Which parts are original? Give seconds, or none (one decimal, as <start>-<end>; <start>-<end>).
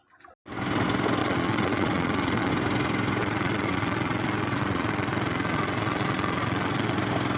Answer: 0.0-1.2; 2.5-3.2; 7.0-7.4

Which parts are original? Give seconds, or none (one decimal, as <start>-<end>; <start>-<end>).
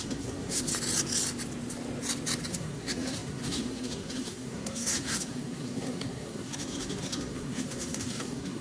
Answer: 0.7-2.5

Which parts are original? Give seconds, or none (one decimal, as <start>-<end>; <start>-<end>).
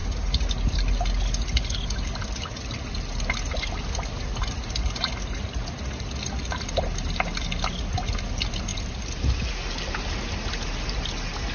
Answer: 0.0-11.5